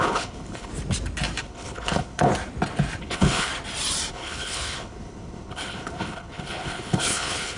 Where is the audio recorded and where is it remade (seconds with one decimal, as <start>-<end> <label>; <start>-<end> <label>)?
0.0-0.7 remade; 0.7-1.4 recorded; 1.4-2.3 remade; 2.3-3.0 recorded; 3.0-3.5 remade; 3.5-4.1 recorded; 4.1-7.6 remade